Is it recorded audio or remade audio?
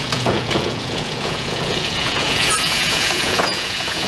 remade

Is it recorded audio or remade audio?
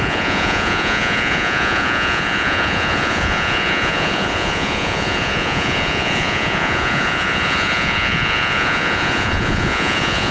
remade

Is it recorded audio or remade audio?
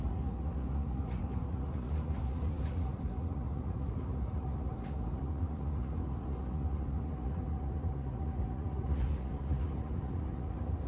remade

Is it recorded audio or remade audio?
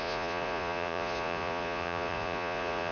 remade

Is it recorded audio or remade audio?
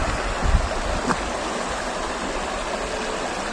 recorded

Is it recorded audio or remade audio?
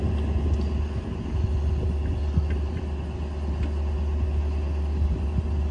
recorded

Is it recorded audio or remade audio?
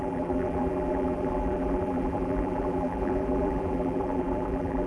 remade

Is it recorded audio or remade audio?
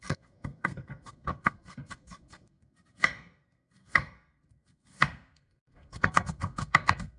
remade